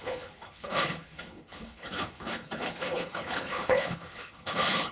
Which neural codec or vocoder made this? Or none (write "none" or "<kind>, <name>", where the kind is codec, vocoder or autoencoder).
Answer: codec, HILCodec